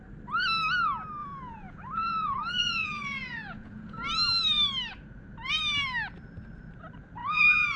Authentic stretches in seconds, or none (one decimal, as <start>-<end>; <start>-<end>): 0.0-1.2; 4.0-7.2